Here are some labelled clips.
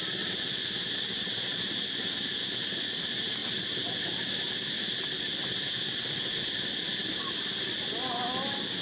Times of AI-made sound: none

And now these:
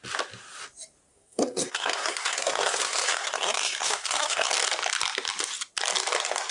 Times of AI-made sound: 1.1-4.5 (codec, SNAC)

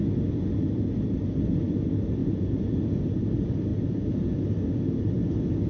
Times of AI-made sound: 2.2-3.0 (vocoder, Vocos); 3.7-4.3